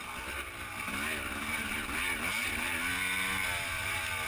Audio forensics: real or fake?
real